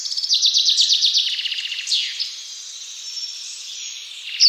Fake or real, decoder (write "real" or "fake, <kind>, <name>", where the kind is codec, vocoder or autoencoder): real